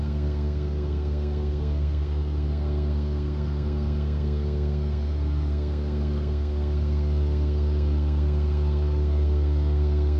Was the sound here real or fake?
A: fake